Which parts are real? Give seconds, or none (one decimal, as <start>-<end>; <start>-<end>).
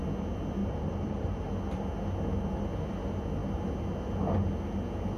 0.0-0.6; 1.5-5.2